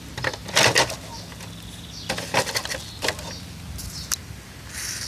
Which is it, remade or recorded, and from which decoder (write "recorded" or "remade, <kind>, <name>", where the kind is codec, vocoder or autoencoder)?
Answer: recorded